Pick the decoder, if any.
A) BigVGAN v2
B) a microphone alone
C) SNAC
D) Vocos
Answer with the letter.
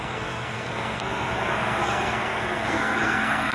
C